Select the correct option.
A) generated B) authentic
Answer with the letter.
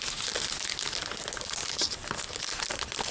B